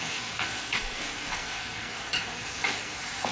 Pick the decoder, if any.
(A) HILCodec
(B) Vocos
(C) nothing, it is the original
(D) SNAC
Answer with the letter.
D